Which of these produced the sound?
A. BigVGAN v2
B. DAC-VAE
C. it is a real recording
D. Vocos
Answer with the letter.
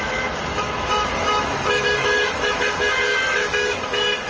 B